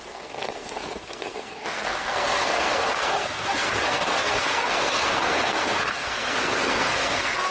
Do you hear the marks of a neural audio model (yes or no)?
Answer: yes